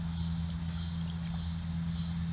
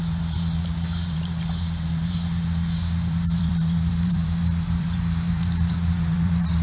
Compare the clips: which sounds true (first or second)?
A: first